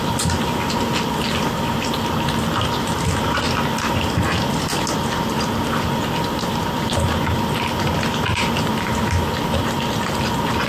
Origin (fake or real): real